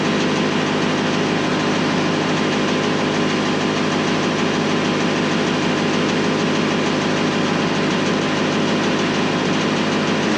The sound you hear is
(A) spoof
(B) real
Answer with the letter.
B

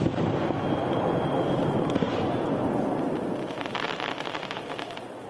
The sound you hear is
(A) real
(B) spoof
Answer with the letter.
A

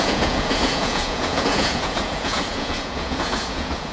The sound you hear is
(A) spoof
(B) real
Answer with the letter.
A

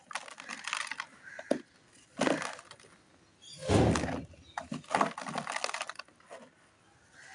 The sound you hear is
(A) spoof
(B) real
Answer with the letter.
B